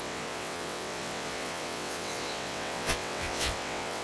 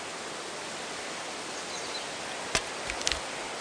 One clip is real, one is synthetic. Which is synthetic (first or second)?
first